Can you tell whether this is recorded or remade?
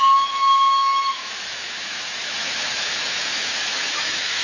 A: remade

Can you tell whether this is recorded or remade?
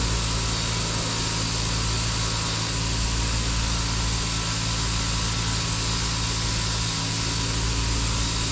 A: recorded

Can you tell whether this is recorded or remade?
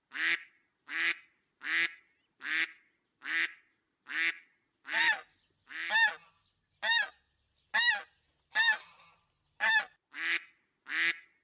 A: recorded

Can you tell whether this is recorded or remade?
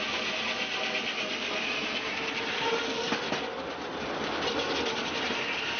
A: recorded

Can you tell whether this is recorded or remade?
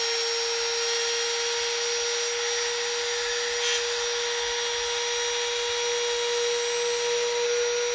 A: recorded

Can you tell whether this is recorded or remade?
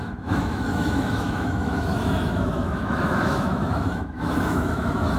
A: remade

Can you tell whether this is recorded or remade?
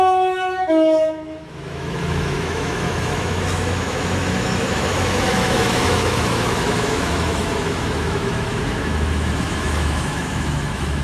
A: remade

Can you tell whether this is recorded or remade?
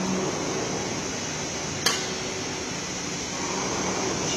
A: recorded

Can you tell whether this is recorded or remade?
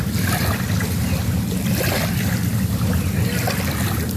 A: recorded